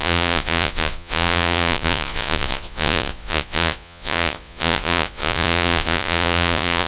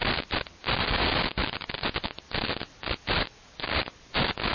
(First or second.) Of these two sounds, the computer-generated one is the first